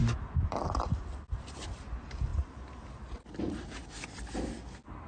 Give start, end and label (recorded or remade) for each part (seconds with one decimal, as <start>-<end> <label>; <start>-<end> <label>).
0.0-5.1 recorded